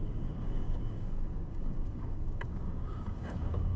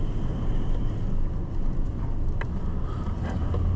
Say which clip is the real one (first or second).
second